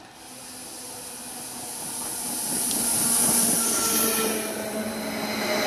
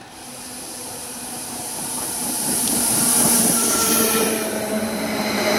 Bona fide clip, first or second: first